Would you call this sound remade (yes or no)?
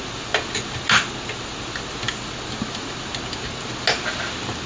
no